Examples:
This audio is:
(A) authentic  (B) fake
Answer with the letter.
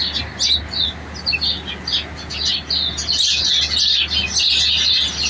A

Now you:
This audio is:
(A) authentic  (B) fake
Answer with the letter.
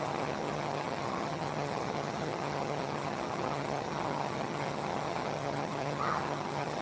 B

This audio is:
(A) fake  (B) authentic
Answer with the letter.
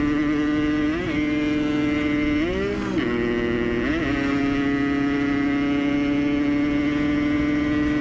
B